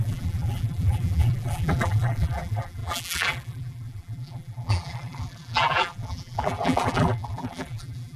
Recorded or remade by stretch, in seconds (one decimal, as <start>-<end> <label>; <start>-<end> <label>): 0.0-8.2 remade